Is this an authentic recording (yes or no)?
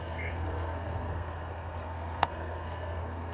no